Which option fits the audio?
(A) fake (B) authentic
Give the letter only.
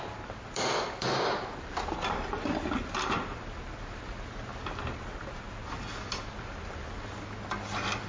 B